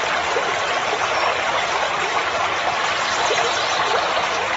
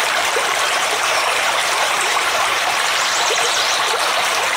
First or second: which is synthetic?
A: second